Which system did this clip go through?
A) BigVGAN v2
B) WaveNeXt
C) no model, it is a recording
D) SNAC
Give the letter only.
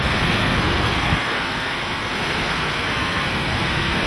D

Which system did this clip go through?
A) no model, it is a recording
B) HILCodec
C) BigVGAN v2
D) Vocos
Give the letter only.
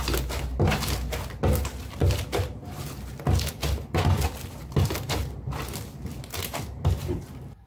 A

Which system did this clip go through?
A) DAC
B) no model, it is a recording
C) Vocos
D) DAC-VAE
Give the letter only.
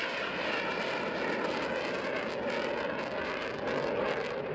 B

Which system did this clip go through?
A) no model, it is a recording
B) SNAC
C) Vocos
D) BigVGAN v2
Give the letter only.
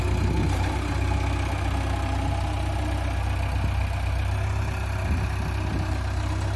A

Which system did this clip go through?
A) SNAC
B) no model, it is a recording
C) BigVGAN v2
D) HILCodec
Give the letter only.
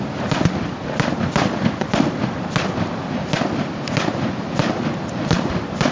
C